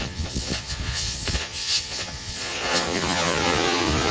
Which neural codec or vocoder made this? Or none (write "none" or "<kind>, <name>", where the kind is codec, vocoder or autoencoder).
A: vocoder, Vocos